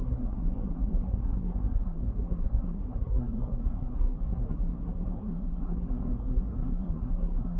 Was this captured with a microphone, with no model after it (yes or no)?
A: no